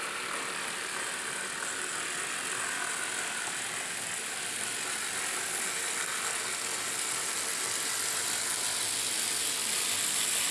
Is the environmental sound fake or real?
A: real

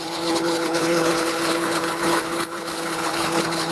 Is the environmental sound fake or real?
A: fake